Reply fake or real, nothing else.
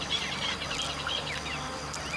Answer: real